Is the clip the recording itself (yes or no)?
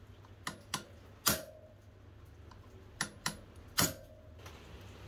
yes